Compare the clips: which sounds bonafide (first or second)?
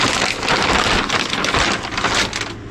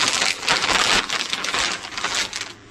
first